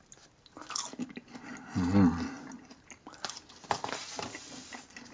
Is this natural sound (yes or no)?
yes